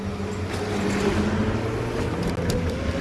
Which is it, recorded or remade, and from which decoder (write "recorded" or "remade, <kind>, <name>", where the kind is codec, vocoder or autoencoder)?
recorded